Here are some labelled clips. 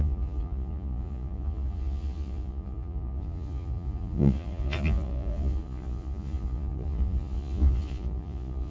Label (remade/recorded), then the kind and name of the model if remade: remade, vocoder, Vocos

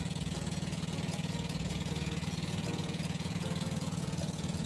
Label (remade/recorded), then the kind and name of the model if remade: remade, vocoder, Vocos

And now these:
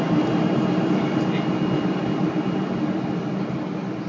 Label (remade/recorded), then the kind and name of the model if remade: recorded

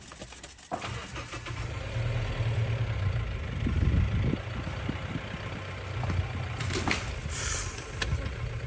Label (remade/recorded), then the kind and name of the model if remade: recorded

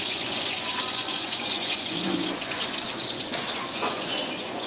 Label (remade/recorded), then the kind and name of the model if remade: remade, vocoder, Vocos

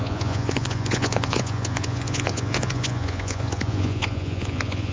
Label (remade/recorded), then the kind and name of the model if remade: remade, vocoder, Vocos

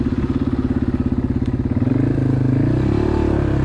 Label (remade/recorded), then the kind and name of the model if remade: recorded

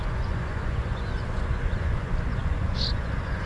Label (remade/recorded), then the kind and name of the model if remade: remade, vocoder, Vocos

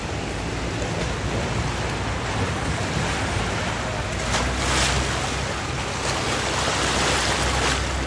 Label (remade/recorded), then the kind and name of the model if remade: recorded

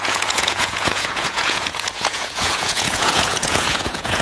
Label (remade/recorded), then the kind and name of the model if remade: remade, vocoder, Vocos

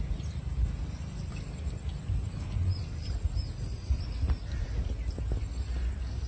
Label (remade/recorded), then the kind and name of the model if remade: recorded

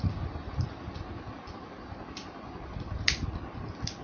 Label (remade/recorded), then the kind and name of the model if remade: recorded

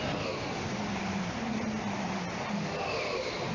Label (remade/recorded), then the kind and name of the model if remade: recorded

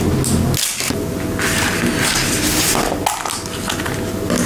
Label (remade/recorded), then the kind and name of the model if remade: recorded